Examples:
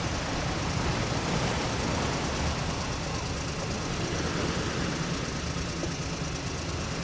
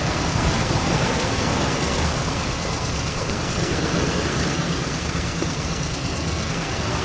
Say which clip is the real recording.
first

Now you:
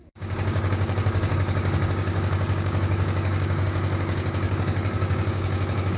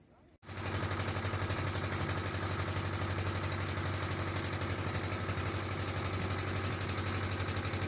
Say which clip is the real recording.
second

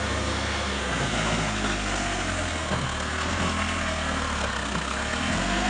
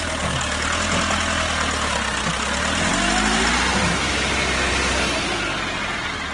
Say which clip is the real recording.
second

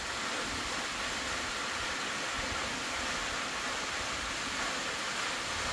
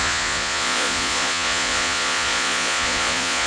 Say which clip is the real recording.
first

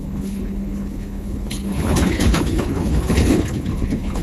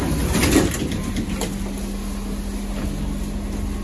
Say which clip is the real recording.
second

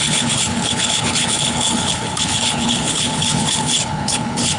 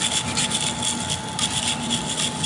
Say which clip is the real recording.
second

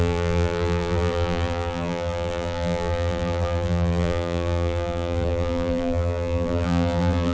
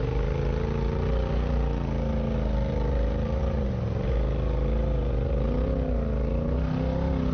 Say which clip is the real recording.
second